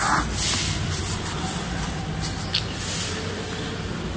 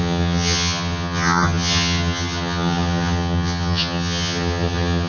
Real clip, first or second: first